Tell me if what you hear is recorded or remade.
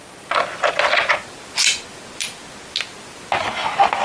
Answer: recorded